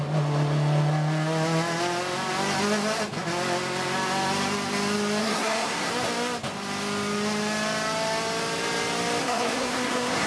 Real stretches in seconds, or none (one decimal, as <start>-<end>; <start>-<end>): 0.0-5.2; 5.9-9.2